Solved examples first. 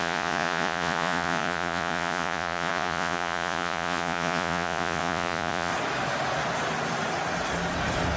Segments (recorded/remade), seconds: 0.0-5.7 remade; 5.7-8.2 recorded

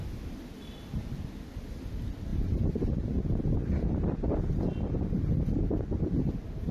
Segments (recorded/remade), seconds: 0.0-6.7 recorded

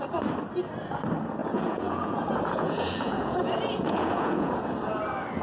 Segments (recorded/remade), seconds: 0.0-1.4 recorded; 1.4-4.6 remade; 4.6-5.4 recorded

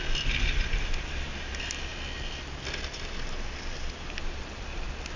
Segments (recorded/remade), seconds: 0.0-5.2 recorded